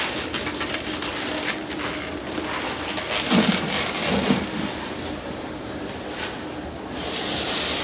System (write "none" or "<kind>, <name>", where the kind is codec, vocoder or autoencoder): none